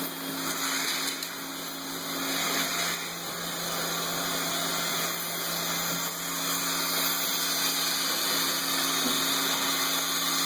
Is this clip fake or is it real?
real